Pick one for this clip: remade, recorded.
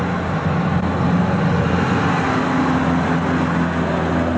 recorded